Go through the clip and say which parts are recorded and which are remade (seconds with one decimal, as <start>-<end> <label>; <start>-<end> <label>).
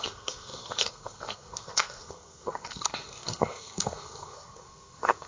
0.0-5.3 remade